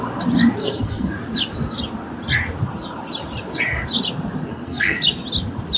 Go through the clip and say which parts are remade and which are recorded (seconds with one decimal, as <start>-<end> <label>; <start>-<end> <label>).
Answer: 0.0-0.6 recorded; 0.6-1.1 remade; 1.1-4.5 recorded; 4.5-5.0 remade; 5.0-5.8 recorded